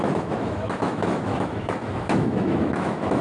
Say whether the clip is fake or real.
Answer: fake